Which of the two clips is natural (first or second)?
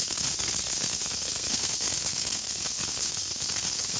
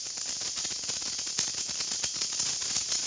second